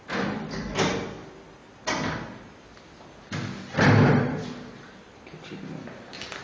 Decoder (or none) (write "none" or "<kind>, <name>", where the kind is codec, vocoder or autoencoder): none